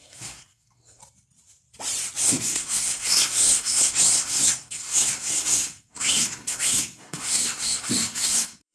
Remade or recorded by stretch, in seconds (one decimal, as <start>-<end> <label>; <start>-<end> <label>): 0.0-1.0 remade; 1.0-2.2 recorded; 2.2-8.7 remade